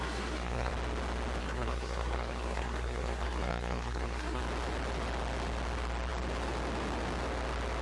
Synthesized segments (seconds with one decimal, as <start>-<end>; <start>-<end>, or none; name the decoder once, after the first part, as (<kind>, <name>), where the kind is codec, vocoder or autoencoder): 0.0-0.7 (codec, SNAC); 1.4-4.4